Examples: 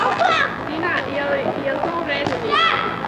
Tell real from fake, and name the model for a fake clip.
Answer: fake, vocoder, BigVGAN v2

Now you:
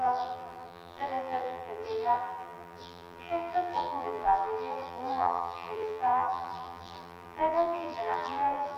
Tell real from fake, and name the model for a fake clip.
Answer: fake, vocoder, BigVGAN v2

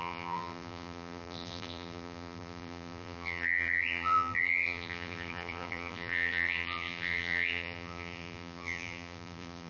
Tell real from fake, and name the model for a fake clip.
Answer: fake, vocoder, BigVGAN v2